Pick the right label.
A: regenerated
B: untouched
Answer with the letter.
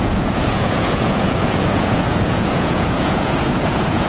A